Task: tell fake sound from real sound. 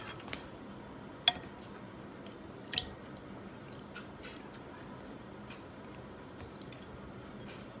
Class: real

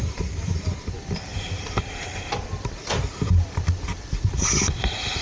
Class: fake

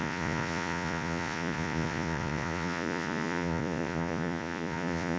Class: fake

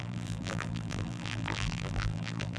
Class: fake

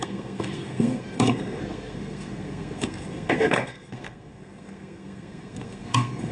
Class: fake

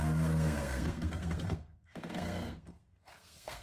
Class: fake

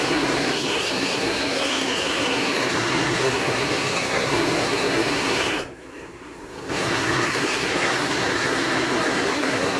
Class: fake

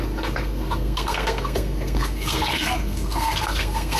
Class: fake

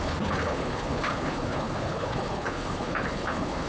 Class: fake